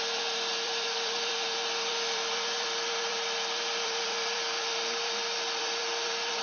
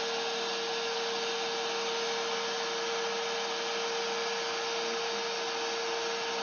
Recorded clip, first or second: second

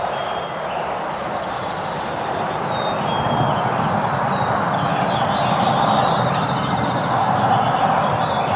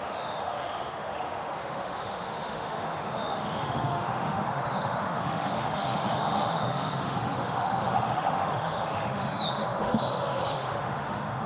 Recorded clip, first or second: first